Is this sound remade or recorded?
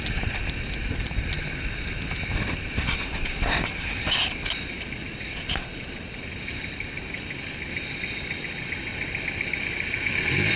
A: recorded